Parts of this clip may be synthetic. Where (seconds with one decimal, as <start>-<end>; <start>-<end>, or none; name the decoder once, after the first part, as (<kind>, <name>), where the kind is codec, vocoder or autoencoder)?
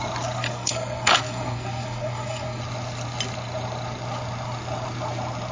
0.4-2.6 (codec, SNAC)